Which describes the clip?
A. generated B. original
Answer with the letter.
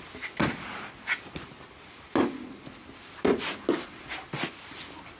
B